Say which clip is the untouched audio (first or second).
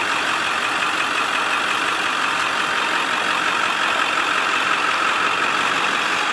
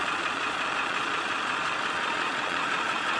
first